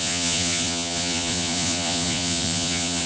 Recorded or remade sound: remade